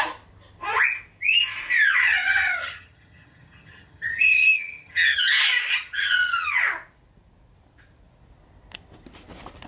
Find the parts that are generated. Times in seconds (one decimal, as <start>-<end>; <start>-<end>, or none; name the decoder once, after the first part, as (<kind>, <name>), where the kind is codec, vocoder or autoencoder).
2.0-5.2 (vocoder, HiFi-GAN); 5.7-6.5